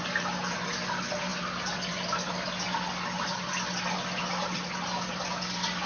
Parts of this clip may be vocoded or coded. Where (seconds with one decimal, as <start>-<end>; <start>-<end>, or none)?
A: none